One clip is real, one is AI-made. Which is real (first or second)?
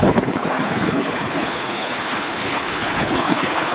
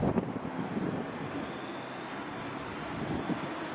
second